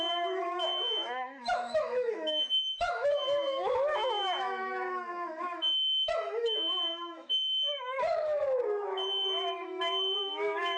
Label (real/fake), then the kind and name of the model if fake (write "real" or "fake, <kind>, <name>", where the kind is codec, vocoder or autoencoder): fake, autoencoder, DAC-VAE